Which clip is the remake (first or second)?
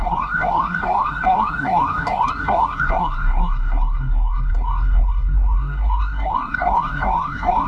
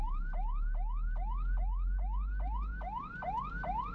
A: first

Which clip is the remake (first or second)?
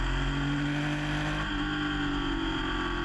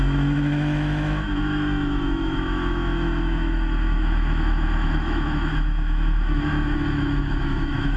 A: second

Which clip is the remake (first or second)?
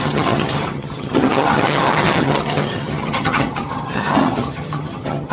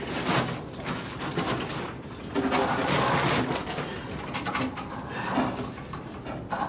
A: first